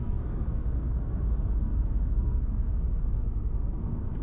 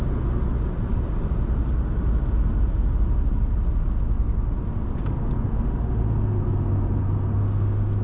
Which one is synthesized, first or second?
first